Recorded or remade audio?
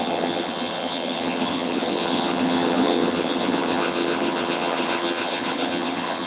remade